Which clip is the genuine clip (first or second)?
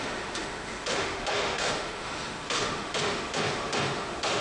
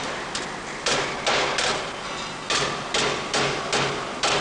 second